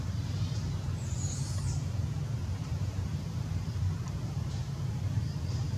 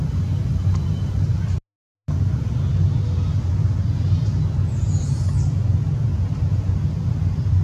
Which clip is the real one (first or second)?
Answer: second